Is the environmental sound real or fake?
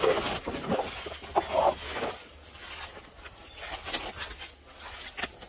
real